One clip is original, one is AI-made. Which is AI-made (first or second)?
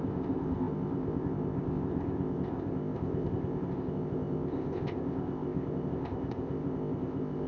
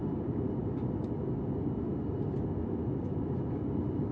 first